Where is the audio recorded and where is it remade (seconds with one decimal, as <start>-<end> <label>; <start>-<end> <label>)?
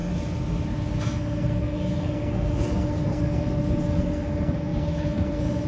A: 0.0-1.0 recorded; 1.0-5.7 remade